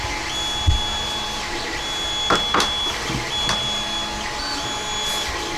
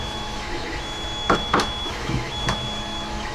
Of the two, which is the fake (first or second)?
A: second